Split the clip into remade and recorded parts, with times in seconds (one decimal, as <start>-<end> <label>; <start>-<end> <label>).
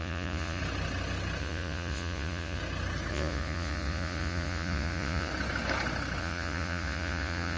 0.0-0.6 remade; 0.6-1.4 recorded; 1.4-2.6 remade; 2.6-3.1 recorded; 3.1-5.3 remade; 5.3-6.2 recorded; 6.2-7.6 remade